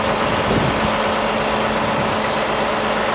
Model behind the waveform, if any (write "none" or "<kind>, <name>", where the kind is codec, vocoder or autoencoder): none